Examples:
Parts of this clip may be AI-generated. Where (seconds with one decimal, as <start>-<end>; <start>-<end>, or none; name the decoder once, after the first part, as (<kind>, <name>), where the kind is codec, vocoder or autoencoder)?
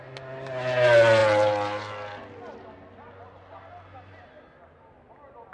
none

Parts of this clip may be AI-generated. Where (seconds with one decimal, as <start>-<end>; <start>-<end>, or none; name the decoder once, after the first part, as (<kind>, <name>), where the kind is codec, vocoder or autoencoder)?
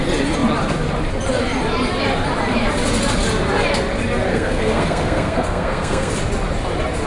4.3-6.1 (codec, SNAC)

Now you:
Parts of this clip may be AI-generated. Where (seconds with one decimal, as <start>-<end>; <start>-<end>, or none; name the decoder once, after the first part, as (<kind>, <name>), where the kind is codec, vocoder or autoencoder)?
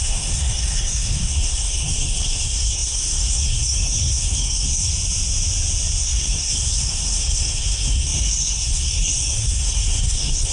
0.0-4.9 (codec, SNAC); 6.0-10.5